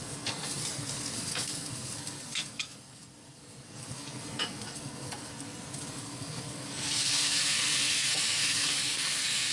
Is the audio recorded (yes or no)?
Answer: no